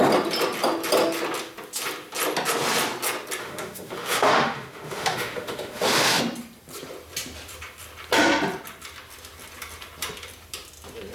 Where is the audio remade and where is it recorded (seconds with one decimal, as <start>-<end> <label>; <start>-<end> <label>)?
0.0-3.4 recorded; 3.4-6.2 remade; 6.2-11.1 recorded